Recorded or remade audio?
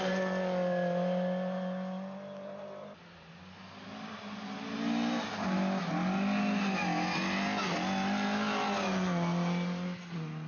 recorded